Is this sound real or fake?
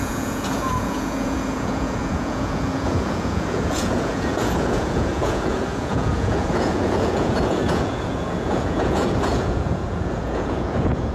fake